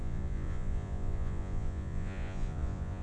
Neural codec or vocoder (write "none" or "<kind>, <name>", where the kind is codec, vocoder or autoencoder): vocoder, Vocos